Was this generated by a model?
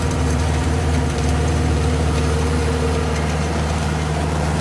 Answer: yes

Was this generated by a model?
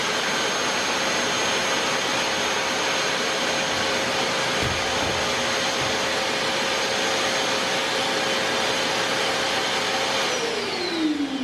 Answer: no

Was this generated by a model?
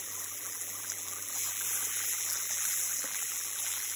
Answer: yes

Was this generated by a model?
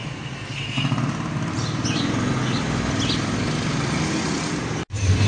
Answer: no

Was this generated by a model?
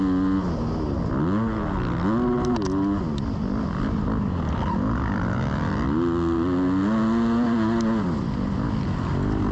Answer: no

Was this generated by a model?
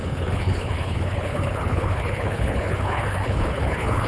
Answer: yes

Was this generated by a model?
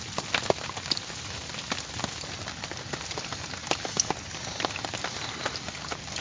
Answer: no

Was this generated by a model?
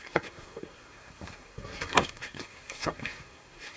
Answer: yes